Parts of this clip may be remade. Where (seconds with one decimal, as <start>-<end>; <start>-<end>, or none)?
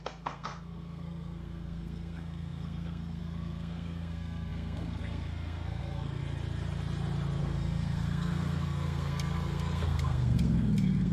0.0-6.2; 7.4-11.1